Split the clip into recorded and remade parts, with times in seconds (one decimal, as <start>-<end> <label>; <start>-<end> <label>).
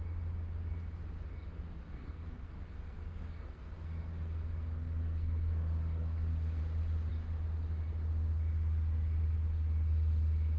0.0-1.9 recorded; 1.9-6.6 remade; 6.6-10.6 recorded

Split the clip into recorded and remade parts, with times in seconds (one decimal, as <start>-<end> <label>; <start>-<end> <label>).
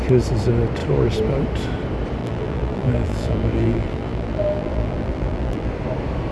0.0-2.2 recorded; 2.2-5.7 remade; 5.7-6.3 recorded